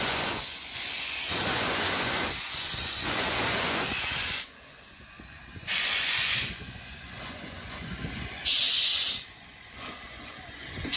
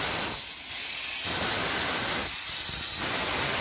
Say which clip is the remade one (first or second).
first